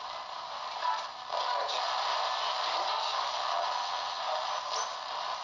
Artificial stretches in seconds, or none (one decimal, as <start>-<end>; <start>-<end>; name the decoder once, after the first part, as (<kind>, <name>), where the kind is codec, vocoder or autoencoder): 3.5-4.2 (vocoder, HiFi-GAN)